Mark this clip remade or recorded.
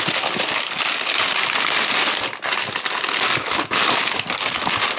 recorded